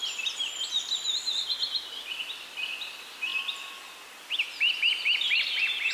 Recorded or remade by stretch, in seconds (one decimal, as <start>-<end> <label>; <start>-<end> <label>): 0.0-3.3 remade; 3.3-4.2 recorded; 4.2-5.9 remade